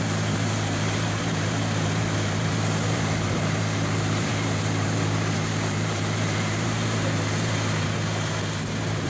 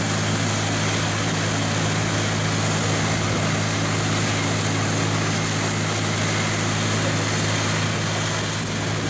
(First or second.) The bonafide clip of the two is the second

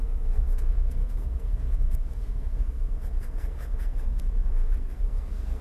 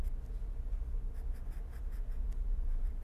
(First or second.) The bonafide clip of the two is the second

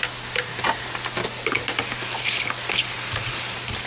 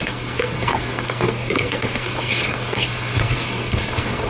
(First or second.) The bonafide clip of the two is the first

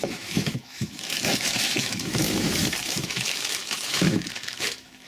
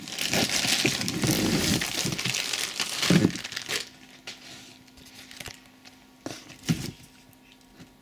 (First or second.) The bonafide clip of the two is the second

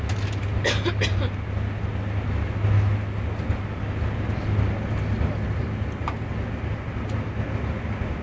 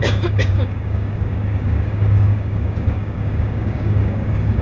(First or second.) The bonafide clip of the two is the first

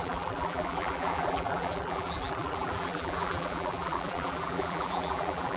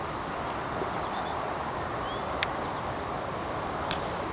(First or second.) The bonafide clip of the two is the second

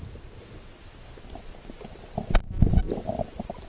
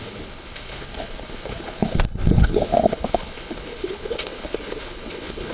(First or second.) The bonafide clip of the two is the first